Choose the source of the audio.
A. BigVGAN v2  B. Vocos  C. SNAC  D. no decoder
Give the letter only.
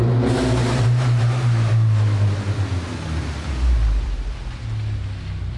D